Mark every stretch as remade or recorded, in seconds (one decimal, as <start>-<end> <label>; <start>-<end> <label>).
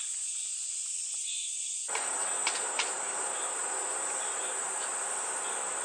0.0-5.8 recorded